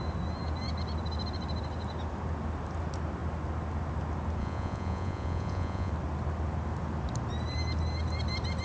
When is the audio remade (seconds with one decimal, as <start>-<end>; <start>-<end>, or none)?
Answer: 4.4-5.9